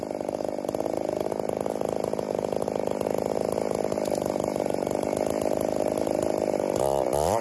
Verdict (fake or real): real